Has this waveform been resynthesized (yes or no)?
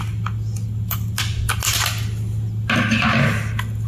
no